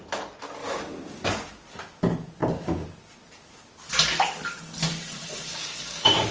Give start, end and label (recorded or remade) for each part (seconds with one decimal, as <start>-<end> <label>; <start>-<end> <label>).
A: 0.0-0.6 recorded; 0.6-1.3 remade; 1.3-5.5 recorded; 5.5-6.3 remade